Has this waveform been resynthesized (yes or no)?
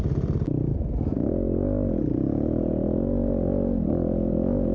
no